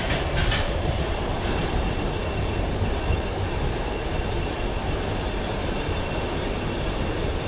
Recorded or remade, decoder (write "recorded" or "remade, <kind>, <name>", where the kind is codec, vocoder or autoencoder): remade, vocoder, BigVGAN v2